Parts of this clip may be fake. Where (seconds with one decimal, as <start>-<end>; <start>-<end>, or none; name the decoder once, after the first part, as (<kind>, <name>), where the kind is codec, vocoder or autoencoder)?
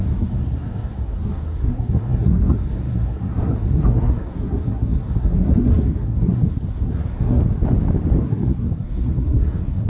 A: 0.0-7.4 (codec, SNAC); 8.2-9.9